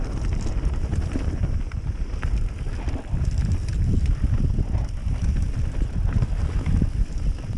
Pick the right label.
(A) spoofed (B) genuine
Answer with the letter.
A